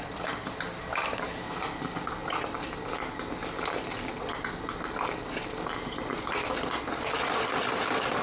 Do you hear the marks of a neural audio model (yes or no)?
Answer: no